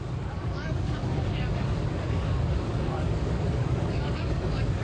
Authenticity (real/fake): fake